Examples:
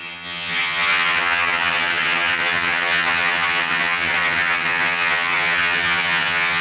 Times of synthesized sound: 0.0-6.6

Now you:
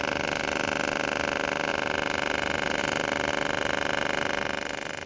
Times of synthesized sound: none

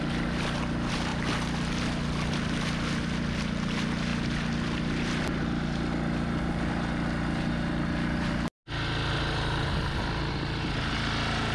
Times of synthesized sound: none

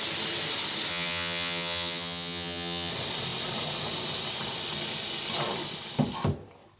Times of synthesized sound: 0.9-2.9

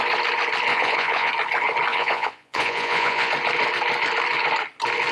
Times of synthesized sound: 0.7-1.3; 1.9-3.3

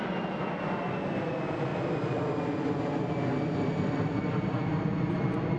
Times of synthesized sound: none

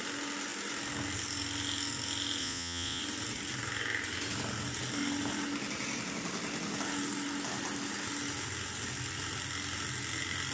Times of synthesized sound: 2.4-3.0